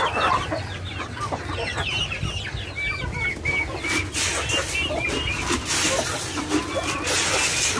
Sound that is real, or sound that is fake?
real